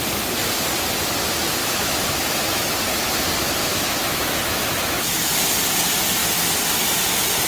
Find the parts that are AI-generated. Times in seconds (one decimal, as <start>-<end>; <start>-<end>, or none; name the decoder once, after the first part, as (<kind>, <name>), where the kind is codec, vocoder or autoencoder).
1.6-2.8 (autoencoder, DAC-VAE); 3.6-5.3